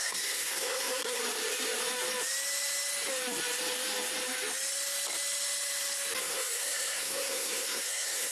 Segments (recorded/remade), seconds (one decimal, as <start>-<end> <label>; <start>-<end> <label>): 0.0-1.2 remade; 1.2-6.2 recorded; 6.2-8.3 remade